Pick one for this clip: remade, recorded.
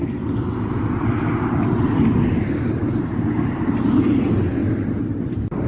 recorded